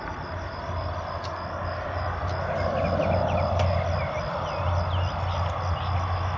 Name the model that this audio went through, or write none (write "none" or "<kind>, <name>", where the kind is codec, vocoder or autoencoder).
none